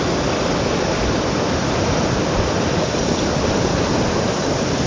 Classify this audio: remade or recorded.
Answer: recorded